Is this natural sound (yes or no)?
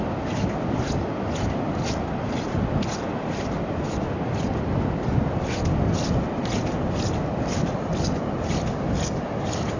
yes